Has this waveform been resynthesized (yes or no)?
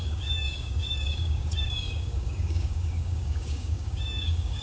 yes